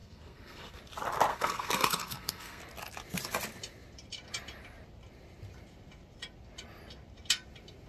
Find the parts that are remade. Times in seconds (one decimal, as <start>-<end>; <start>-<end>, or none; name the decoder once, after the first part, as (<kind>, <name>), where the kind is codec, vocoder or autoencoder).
0.0-0.8 (codec, SNAC); 1.3-2.6

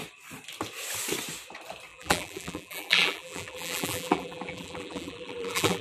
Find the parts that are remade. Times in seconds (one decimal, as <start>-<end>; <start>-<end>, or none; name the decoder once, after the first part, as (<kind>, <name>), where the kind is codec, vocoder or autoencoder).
1.9-5.8 (vocoder, BigVGAN v2)

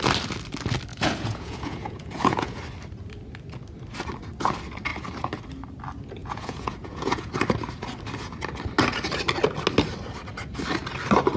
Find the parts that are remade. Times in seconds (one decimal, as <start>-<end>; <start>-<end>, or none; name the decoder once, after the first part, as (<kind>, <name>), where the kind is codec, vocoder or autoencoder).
0.9-2.6 (vocoder, Vocos); 6.2-7.3

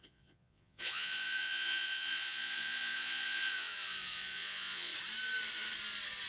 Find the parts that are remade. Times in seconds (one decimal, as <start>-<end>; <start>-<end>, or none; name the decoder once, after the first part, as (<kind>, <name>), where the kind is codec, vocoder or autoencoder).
0.0-4.9 (vocoder, Vocos)

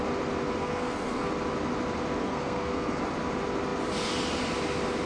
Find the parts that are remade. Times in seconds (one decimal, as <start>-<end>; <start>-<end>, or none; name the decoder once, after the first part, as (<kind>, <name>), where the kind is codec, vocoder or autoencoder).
0.6-1.3 (codec, SNAC); 2.2-3.0

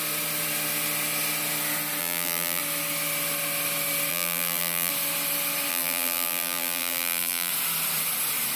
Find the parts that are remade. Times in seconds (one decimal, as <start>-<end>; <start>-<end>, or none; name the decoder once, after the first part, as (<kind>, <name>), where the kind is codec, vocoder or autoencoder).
2.0-2.6 (vocoder, BigVGAN v2); 4.1-4.9; 5.7-7.5